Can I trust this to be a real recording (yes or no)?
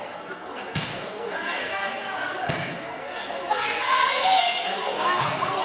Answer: no